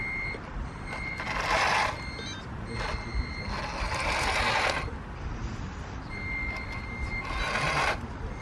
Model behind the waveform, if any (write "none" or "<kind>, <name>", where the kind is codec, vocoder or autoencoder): none